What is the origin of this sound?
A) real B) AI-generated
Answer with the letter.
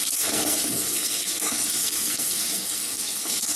B